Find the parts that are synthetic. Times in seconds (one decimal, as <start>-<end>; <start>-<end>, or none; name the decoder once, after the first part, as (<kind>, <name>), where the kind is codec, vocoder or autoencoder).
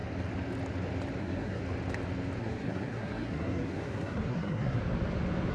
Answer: 1.2-1.6 (codec, SNAC); 2.4-4.8